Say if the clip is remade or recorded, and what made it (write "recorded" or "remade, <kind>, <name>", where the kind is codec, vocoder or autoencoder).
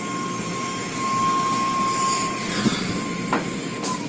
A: recorded